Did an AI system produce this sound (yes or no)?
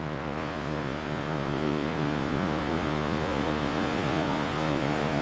yes